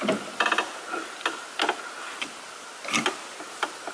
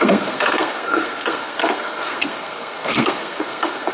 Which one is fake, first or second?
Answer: second